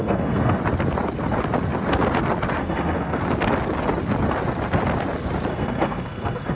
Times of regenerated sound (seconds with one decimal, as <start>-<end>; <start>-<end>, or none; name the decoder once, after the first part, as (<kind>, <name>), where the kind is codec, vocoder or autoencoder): 0.0-0.6 (codec, SNAC); 2.6-3.2; 5.5-6.6